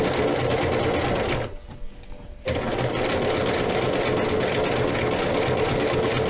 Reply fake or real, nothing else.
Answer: real